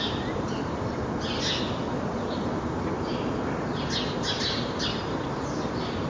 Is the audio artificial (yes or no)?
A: no